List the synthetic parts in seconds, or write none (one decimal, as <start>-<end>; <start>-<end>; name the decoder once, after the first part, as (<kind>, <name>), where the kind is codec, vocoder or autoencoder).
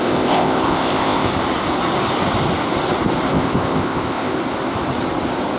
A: 0.0-1.3 (codec, ZipCodec); 3.3-4.4